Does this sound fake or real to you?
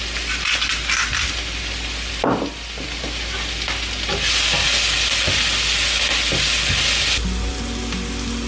real